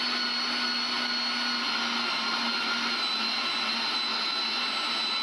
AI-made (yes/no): no